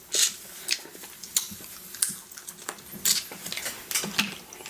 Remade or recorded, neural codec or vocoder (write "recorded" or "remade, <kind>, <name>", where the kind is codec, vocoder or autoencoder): recorded